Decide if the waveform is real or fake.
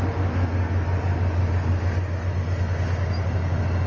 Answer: real